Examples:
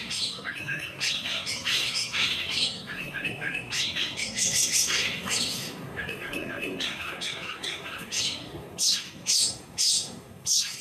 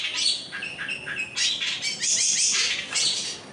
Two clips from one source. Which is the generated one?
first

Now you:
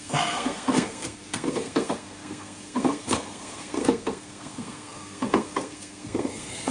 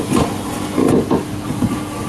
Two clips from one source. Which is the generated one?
first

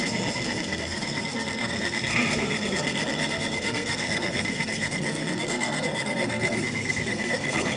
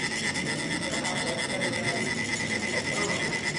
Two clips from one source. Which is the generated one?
first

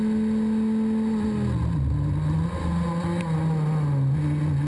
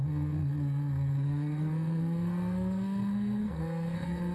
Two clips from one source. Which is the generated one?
second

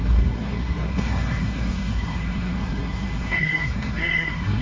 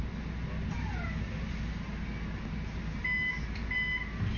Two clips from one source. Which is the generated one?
first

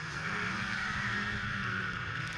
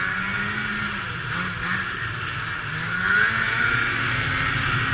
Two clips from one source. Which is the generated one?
first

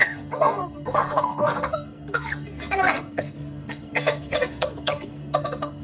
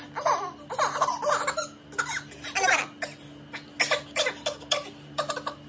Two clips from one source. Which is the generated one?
first